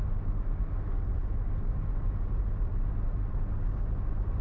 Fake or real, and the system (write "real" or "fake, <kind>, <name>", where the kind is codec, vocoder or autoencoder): real